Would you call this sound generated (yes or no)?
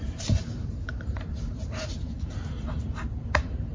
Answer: yes